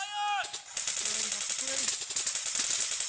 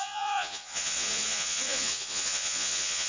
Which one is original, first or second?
first